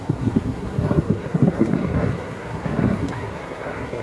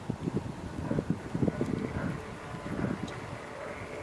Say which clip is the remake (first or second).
first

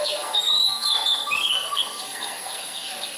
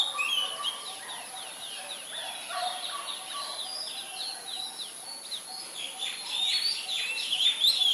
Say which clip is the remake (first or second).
first